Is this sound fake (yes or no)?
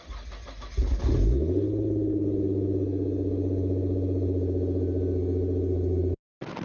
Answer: no